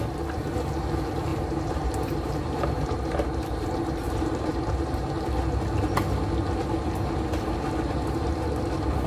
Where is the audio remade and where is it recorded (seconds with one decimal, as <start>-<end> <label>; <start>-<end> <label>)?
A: 0.0-1.3 recorded; 1.3-5.2 remade; 5.2-9.1 recorded